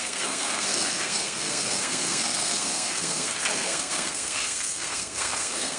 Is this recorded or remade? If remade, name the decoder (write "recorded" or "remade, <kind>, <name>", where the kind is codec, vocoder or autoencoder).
remade, codec, SNAC